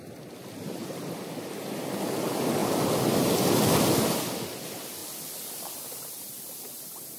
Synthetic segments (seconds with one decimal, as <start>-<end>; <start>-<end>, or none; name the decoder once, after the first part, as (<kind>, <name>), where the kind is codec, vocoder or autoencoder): none